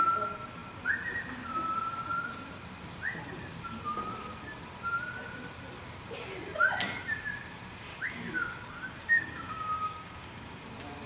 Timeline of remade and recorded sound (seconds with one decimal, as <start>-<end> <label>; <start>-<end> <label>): 0.0-7.9 recorded; 7.9-10.6 remade; 10.6-11.1 recorded